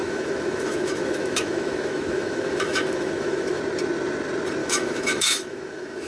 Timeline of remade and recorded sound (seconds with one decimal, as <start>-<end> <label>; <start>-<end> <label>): 0.0-3.6 remade; 3.6-4.6 recorded; 4.6-6.1 remade